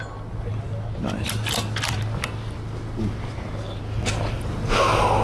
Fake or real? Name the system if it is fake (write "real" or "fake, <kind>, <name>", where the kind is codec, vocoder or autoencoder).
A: real